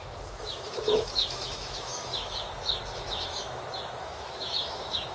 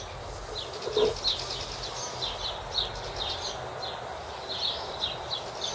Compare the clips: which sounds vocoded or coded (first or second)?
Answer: first